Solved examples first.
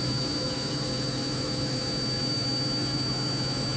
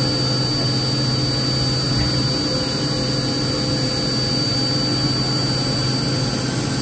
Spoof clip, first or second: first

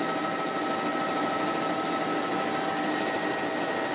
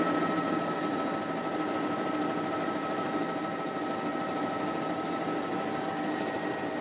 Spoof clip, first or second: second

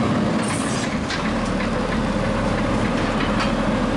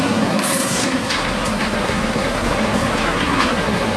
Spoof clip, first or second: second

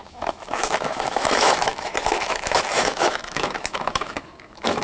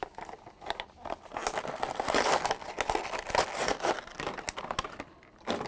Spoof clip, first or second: first